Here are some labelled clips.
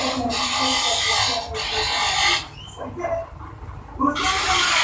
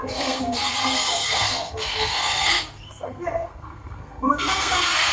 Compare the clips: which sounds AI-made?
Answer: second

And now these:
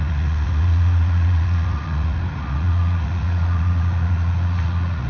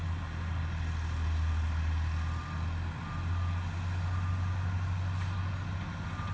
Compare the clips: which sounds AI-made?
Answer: first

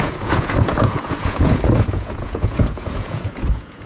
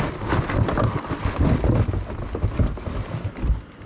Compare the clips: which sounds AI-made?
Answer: first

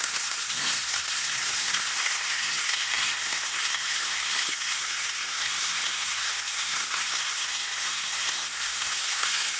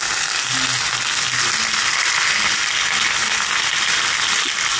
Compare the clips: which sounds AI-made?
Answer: first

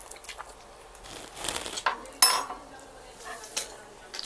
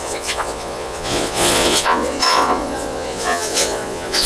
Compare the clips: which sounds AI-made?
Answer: second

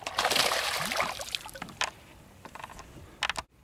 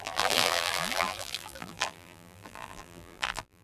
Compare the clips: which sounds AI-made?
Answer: second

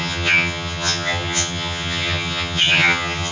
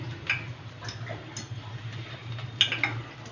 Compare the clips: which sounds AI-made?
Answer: first